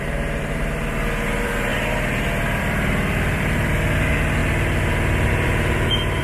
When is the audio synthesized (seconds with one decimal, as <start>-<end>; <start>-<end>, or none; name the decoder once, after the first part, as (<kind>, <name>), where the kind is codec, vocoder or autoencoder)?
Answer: 0.0-1.7 (vocoder, BigVGAN v2); 2.6-4.4; 5.3-6.2